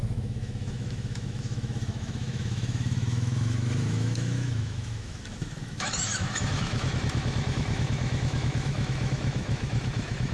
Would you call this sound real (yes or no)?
no